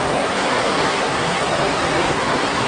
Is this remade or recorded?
remade